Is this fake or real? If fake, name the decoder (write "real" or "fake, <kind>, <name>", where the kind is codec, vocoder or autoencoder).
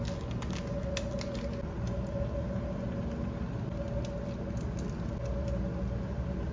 real